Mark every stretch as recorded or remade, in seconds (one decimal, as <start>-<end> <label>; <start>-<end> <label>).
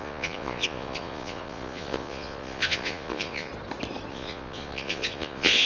0.0-3.5 remade; 3.5-4.1 recorded; 4.1-5.7 remade